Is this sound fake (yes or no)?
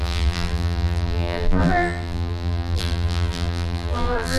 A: yes